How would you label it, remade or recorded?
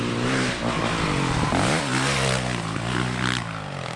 recorded